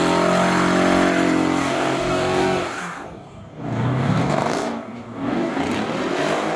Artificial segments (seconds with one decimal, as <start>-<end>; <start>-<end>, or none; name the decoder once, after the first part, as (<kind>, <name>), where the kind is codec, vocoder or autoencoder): 1.6-5.6 (codec, DAC)